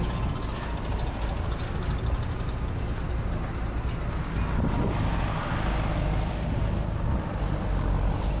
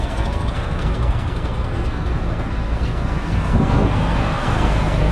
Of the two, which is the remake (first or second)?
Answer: second